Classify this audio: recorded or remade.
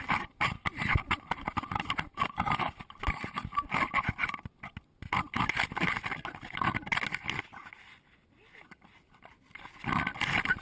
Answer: recorded